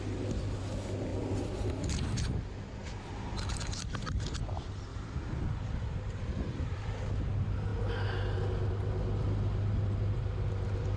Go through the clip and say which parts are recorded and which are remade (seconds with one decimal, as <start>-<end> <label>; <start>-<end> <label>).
0.0-1.1 recorded; 1.1-1.8 remade; 1.8-2.8 recorded; 2.8-4.0 remade; 4.0-4.9 recorded; 4.9-6.9 remade; 6.9-11.0 recorded